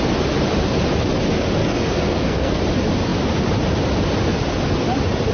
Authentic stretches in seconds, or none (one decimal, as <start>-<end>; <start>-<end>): 0.0-1.6; 2.6-5.3